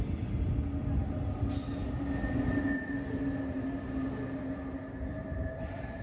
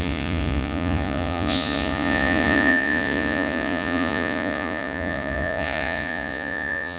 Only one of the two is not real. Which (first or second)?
second